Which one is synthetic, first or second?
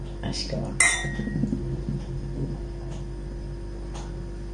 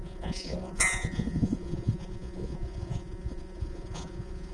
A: second